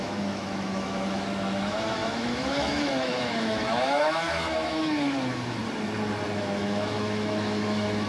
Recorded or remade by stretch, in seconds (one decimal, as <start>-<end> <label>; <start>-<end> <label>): 0.0-5.6 remade; 5.6-6.4 recorded; 6.4-8.1 remade